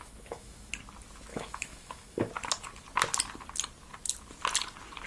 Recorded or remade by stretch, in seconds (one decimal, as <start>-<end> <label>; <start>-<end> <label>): 0.0-0.7 remade; 0.7-1.3 recorded; 1.3-2.3 remade; 2.3-5.1 recorded